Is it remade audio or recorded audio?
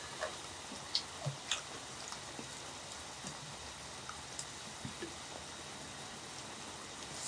recorded